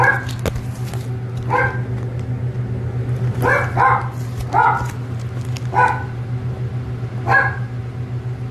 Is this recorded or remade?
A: recorded